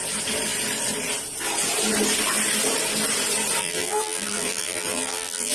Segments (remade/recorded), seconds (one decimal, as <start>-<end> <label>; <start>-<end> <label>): 0.0-3.6 recorded; 3.6-5.5 remade